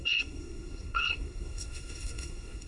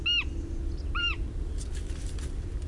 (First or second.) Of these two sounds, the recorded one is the second